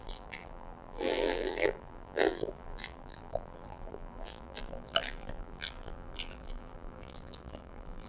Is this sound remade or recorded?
remade